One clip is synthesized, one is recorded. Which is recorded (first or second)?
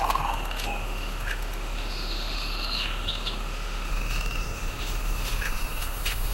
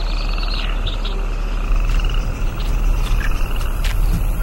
second